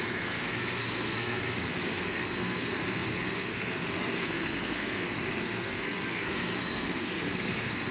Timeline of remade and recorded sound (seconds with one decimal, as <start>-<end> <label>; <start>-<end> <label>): 0.0-7.9 remade